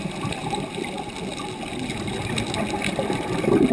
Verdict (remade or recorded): recorded